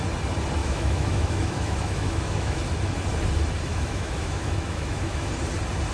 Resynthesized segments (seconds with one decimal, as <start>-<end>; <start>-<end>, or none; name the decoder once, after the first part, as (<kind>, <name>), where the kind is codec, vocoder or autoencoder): 0.6-2.6 (autoencoder, DAC-VAE); 3.7-5.3